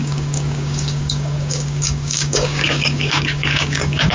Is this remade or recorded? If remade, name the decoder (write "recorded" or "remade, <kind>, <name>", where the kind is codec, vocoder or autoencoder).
remade, codec, DAC